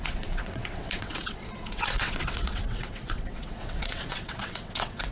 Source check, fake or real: fake